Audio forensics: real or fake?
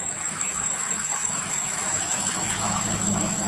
fake